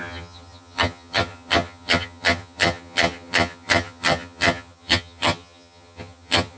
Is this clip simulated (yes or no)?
yes